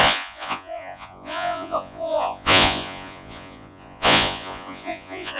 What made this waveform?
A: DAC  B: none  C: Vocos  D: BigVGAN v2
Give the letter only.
C